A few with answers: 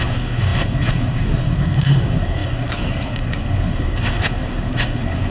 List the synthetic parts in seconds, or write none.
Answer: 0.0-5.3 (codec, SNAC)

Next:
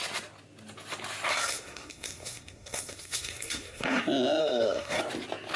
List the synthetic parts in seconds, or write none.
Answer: 1.3-4.0 (codec, SNAC); 4.4-5.0

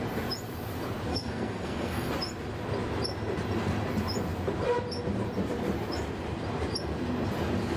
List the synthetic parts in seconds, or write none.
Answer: 1.1-2.1 (codec, SNAC)